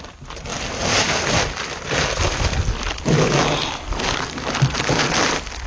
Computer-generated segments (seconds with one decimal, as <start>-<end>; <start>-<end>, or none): none